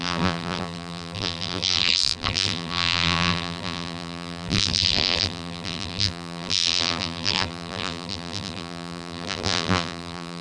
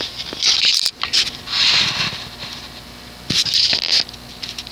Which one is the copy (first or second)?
first